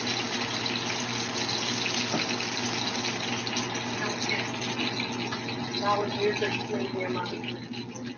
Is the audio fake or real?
real